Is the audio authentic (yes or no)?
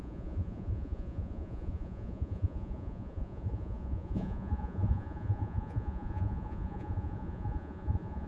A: no